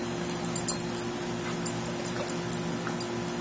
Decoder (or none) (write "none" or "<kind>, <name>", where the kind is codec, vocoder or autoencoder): none